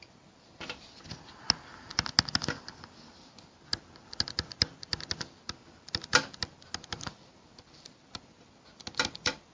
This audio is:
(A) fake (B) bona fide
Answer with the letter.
B